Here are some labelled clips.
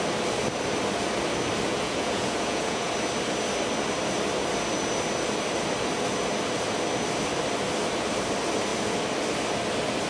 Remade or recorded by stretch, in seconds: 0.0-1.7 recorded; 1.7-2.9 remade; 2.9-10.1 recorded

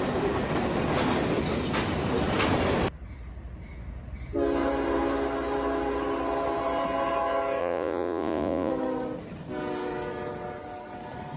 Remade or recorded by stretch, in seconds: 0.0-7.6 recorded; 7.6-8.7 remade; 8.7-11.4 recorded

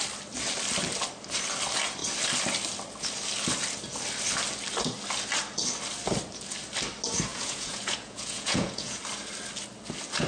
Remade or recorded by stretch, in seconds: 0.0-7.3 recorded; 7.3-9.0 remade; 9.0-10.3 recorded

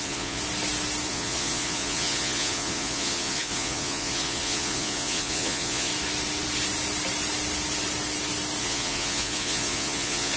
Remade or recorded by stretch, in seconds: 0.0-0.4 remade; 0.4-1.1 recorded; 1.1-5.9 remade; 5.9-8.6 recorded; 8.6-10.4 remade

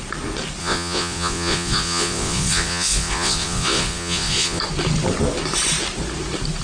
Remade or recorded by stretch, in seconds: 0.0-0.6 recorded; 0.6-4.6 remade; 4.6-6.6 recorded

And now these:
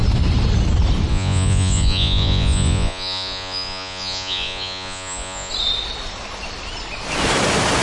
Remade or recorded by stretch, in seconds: 0.0-1.1 recorded; 1.1-5.5 remade; 5.5-7.8 recorded

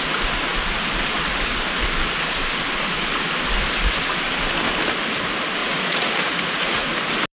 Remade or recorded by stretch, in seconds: 0.0-5.6 recorded; 5.6-7.0 remade; 7.0-7.4 recorded